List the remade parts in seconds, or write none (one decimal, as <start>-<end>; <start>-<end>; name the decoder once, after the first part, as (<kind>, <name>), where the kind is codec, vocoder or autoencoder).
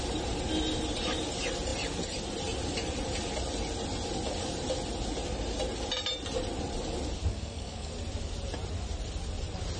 7.3-7.9 (codec, SNAC)